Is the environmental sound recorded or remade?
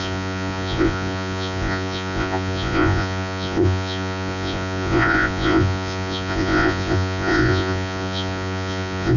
remade